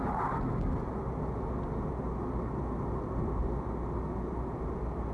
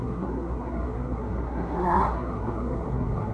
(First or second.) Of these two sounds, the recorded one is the first